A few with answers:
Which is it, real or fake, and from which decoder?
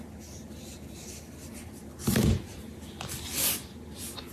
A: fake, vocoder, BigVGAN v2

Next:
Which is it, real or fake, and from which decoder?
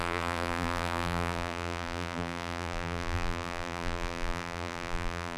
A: fake, vocoder, BigVGAN v2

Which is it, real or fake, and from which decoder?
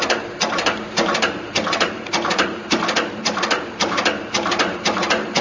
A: fake, vocoder, BigVGAN v2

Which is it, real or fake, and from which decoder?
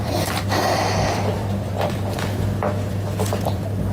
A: fake, vocoder, BigVGAN v2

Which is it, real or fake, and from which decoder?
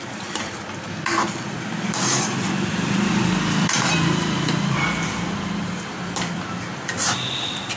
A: fake, vocoder, BigVGAN v2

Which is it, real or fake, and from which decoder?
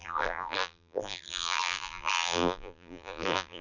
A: fake, vocoder, BigVGAN v2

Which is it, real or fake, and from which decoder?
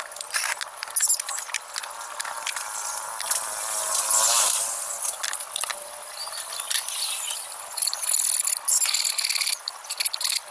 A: real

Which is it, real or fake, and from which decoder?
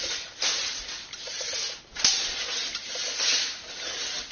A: real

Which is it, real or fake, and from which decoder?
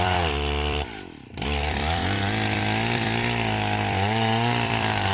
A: fake, vocoder, BigVGAN v2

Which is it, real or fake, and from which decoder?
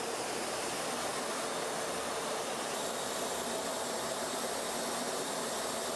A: real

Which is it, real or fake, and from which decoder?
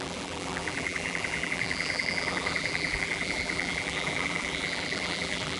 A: fake, vocoder, BigVGAN v2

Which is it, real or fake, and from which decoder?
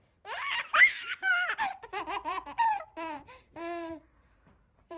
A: fake, vocoder, BigVGAN v2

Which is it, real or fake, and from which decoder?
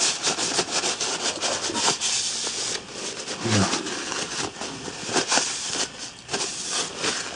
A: real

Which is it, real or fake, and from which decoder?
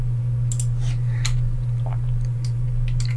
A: real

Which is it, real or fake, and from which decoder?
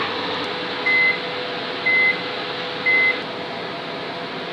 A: real